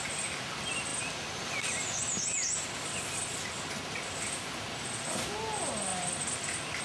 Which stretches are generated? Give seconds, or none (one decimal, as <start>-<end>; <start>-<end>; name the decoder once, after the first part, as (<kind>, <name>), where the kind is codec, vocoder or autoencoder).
none